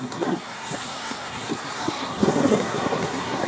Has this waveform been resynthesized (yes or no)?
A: yes